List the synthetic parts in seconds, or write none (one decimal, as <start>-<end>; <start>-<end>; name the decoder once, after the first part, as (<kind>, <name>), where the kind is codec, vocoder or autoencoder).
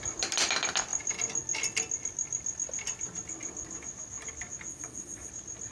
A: 4.7-5.3 (vocoder, Vocos)